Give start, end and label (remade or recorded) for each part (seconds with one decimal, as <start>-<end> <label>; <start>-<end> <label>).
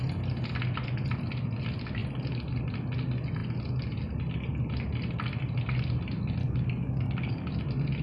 0.0-6.4 recorded; 6.4-7.5 remade; 7.5-8.0 recorded